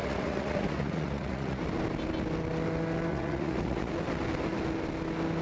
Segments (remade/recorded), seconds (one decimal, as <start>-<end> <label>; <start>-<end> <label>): 0.0-1.6 remade; 1.6-3.1 recorded; 3.1-3.9 remade; 3.9-5.4 recorded